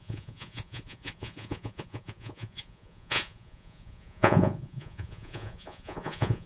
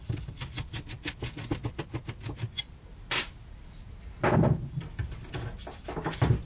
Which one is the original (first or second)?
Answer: second